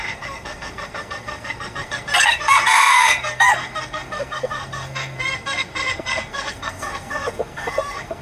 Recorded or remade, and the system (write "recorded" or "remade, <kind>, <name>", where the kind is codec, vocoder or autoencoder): remade, codec, SNAC